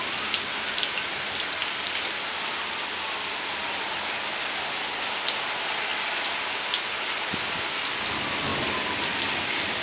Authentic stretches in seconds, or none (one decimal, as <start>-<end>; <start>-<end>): 0.0-9.8